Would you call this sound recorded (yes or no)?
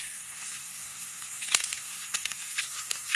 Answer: no